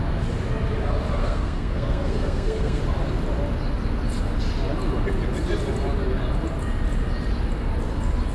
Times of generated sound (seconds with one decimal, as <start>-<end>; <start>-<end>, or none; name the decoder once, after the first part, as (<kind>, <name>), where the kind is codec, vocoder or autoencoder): 1.2-2.8 (codec, SNAC)